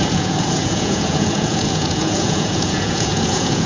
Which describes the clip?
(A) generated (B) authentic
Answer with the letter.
A